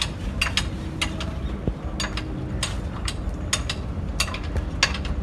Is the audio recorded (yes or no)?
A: yes